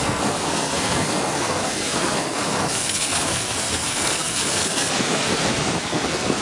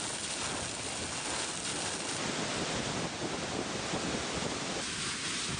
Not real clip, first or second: first